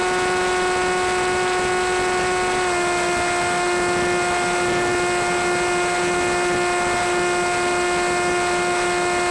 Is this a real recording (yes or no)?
yes